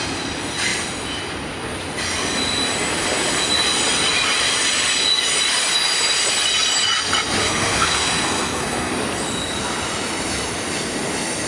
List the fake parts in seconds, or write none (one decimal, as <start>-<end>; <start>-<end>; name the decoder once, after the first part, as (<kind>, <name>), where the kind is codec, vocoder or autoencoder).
7.4-8.9 (codec, SNAC)